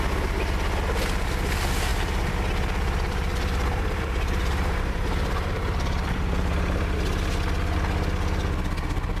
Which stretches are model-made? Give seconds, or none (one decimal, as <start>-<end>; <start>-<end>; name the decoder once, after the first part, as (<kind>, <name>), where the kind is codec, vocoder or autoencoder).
1.9-7.0 (vocoder, BigVGAN v2)